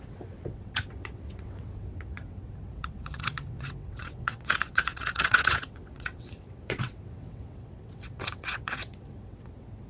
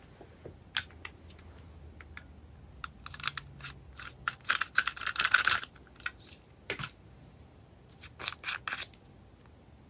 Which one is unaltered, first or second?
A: second